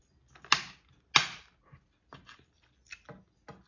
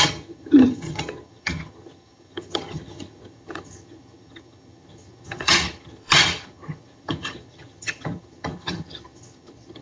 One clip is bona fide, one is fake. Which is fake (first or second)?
second